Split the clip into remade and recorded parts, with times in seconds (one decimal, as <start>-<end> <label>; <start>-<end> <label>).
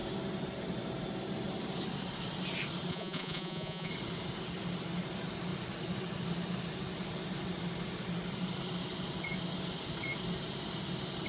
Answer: 0.0-2.9 recorded; 2.9-3.9 remade; 3.9-11.3 recorded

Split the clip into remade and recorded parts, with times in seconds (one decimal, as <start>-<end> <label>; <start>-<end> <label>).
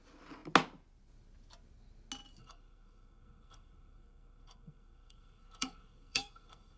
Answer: 0.0-2.4 recorded; 2.4-6.8 remade